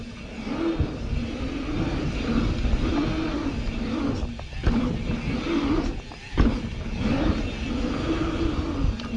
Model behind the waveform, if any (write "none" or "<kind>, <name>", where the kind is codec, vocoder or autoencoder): none